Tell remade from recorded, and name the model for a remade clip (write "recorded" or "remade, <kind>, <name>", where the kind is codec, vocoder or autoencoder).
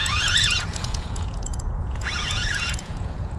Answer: remade, vocoder, Vocos